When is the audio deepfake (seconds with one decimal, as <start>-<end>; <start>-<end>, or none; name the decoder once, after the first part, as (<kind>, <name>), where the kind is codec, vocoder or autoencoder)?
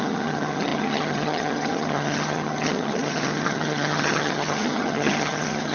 0.0-5.7 (vocoder, HiFi-GAN)